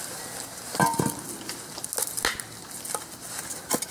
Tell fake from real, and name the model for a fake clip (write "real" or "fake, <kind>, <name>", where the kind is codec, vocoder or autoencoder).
real